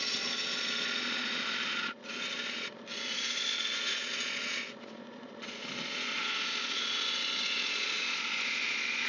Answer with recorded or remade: remade